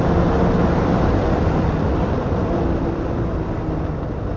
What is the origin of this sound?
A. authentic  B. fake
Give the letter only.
A